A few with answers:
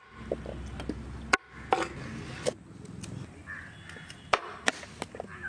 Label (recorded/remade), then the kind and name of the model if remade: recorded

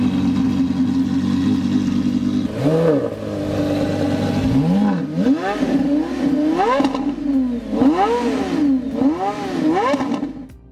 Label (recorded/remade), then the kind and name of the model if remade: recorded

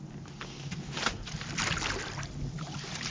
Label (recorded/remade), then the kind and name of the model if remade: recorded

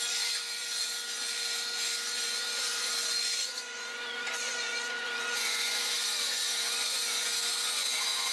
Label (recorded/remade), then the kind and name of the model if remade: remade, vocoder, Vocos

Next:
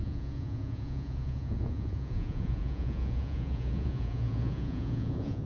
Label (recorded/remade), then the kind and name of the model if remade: remade, vocoder, Vocos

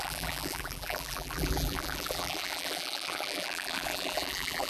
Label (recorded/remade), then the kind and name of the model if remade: remade, vocoder, BigVGAN v2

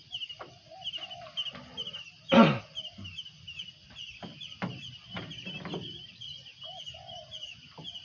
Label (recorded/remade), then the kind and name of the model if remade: recorded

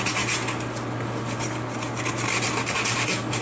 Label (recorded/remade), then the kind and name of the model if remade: recorded